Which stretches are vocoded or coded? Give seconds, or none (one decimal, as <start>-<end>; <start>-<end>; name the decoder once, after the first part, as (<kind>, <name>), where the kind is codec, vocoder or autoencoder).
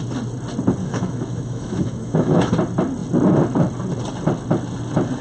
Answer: 0.8-2.5 (autoencoder, DAC-VAE)